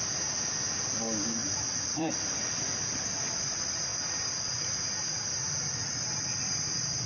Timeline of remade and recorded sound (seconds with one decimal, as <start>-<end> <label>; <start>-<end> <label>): 0.0-1.4 recorded; 1.4-3.2 remade; 3.2-3.9 recorded; 3.9-4.6 remade; 4.6-5.8 recorded; 5.8-7.1 remade

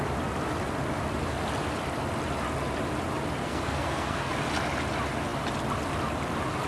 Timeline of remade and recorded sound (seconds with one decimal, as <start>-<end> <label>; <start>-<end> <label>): 0.0-3.4 recorded; 3.4-4.3 remade; 4.3-6.7 recorded

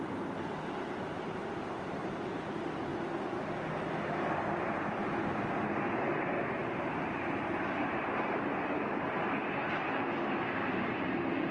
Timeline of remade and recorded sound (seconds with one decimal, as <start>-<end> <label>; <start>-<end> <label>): 0.0-2.9 remade; 2.9-5.8 recorded; 5.8-11.5 remade

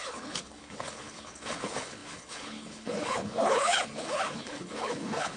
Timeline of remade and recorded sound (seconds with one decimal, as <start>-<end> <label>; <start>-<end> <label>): 0.0-5.4 remade

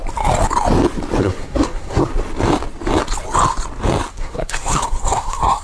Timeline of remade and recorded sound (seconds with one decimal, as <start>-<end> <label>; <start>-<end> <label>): 0.0-1.2 recorded; 1.2-2.1 remade; 2.1-4.1 recorded; 4.1-5.6 remade